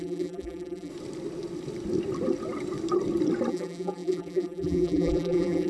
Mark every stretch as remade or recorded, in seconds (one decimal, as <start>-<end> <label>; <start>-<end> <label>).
0.0-0.9 remade; 0.9-3.5 recorded; 3.5-5.7 remade